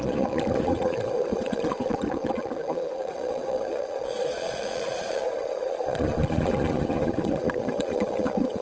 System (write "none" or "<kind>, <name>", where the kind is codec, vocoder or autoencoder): vocoder, Vocos